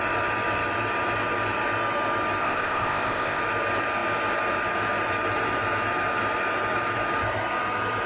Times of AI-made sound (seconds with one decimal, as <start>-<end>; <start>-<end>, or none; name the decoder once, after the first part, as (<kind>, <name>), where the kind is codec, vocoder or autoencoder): 2.4-3.4 (codec, ZipCodec)